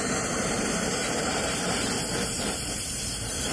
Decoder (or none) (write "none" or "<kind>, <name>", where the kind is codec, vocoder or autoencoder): vocoder, BigVGAN v2